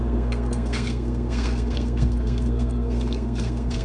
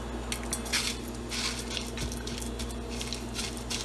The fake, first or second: first